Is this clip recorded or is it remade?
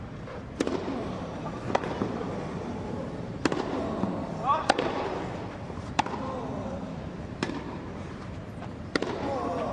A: remade